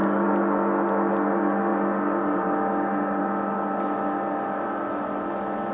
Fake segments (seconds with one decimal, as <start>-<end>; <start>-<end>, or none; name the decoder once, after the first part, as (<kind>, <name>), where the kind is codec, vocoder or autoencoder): none